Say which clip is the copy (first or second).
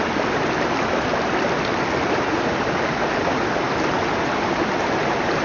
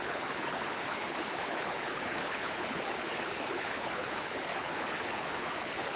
second